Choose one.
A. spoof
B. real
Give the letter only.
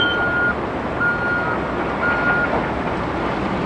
B